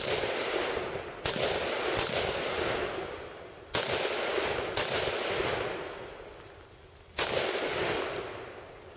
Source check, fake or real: real